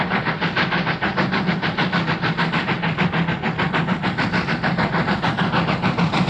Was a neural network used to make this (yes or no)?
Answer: no